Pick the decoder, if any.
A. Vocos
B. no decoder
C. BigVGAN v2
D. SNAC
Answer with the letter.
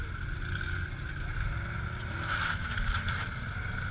B